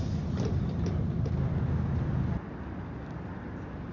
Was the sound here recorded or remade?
recorded